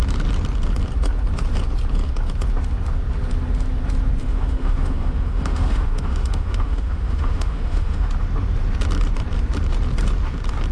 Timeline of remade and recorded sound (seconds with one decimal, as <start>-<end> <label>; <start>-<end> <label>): 0.0-4.2 recorded; 4.2-8.1 remade; 8.1-10.7 recorded